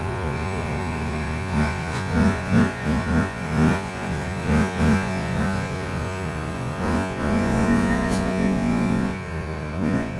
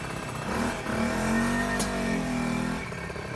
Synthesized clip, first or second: first